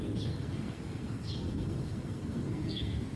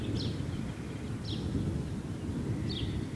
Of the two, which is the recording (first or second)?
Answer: second